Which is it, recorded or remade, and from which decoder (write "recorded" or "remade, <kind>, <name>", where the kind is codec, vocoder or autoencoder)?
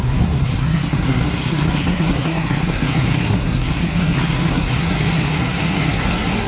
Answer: remade, codec, SNAC